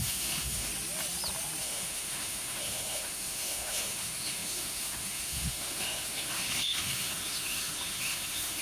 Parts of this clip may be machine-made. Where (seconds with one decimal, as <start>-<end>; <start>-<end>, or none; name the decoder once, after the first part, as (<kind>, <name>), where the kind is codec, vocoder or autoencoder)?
0.0-0.7 (autoencoder, DAC-VAE); 1.6-8.6